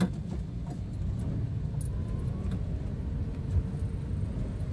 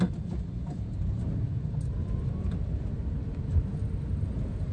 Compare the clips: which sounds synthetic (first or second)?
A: second